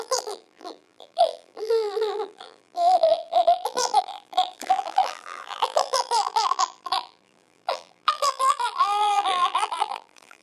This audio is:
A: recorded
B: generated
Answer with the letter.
B